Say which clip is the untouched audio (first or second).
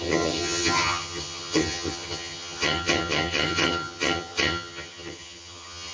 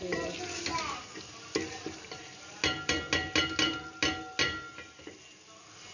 second